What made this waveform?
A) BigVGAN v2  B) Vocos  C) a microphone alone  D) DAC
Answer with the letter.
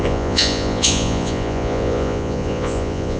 B